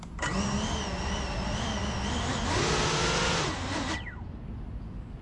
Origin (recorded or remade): recorded